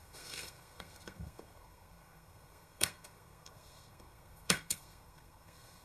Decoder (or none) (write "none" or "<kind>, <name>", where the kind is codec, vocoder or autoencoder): codec, SNAC